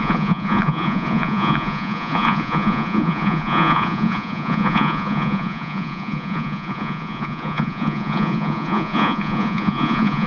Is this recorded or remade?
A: remade